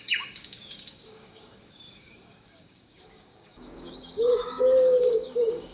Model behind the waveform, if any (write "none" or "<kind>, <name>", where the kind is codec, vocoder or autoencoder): codec, DAC